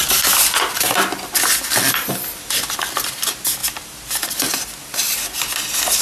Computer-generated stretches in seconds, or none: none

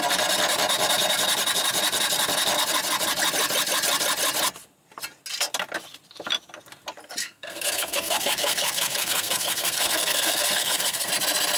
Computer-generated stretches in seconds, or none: 7.2-11.1 (codec, SNAC)

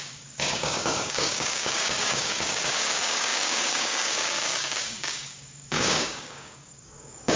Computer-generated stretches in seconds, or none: 0.0-7.4 (codec, DAC)

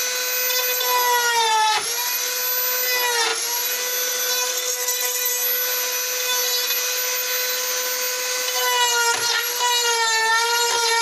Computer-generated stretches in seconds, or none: 4.5-5.3 (codec, SNAC)

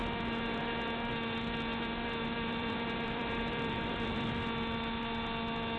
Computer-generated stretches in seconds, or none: 2.2-4.3 (vocoder, BigVGAN v2)